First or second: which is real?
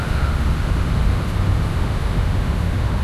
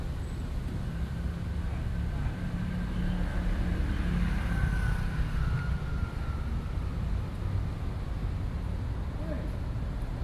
second